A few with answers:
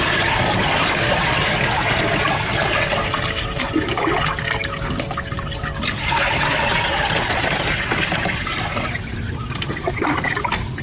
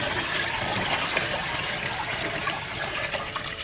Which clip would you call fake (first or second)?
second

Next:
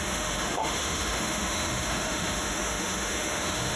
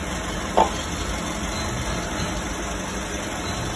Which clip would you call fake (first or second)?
first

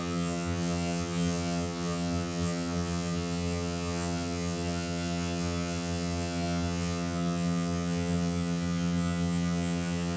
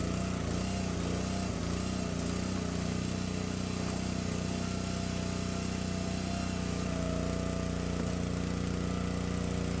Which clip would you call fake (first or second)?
first